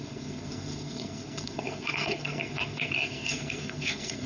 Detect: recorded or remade remade